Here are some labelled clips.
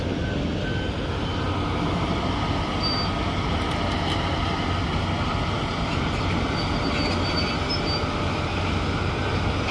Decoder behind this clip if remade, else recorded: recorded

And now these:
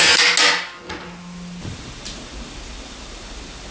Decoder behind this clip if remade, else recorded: recorded